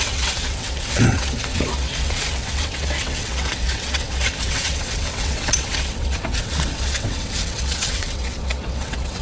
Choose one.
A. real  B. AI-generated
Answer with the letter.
B